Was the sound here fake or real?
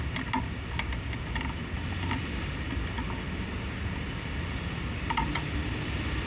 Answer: real